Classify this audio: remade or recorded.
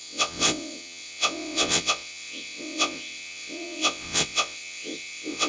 remade